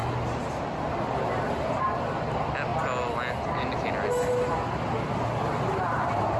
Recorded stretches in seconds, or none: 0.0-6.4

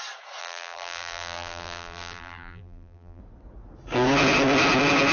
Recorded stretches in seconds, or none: 0.0-0.4; 3.2-5.1

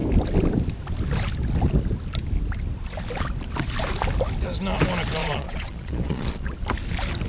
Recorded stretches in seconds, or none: 0.0-5.2; 6.5-7.3

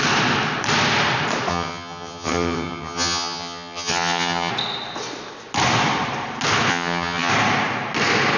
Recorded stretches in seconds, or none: 0.0-1.5; 4.5-6.7; 7.3-8.4